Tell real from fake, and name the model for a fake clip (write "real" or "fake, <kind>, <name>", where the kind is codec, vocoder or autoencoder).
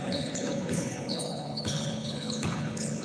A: fake, codec, HILCodec